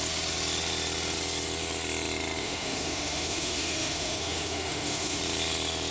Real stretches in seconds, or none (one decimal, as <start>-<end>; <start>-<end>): 0.0-2.4; 5.2-5.9